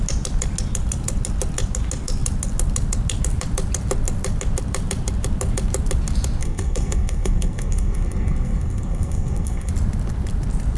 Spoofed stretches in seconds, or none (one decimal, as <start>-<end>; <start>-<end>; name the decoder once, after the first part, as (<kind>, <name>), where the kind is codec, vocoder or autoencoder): 6.4-9.7 (codec, SNAC)